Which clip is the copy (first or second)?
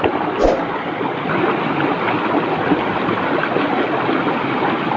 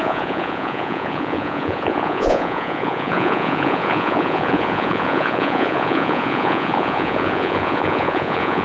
second